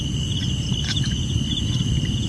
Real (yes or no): yes